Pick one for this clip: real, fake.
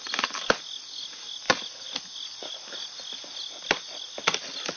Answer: real